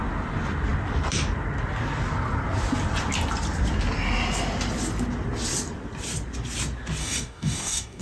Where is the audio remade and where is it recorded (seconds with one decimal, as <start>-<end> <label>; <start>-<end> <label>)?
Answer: 0.0-7.0 recorded; 7.0-8.0 remade